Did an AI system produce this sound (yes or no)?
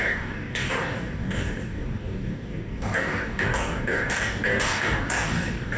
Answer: yes